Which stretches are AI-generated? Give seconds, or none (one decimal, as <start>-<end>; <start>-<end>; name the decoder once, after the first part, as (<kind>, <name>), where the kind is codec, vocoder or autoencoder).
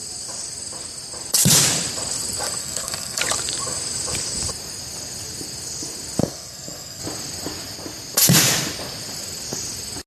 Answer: 2.6-3.2 (codec, SNAC); 6.2-7.0